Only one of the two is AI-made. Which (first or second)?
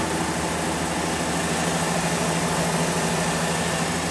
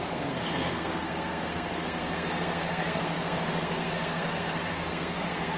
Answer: second